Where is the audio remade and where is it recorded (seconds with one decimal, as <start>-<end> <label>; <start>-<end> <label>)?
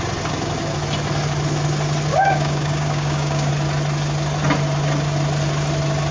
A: 0.0-2.1 recorded; 2.1-3.5 remade; 3.5-6.1 recorded